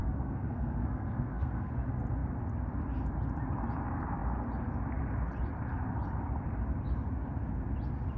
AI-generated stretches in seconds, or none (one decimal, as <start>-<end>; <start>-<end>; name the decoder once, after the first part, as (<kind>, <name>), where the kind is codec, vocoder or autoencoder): 0.0-1.7 (codec, SNAC)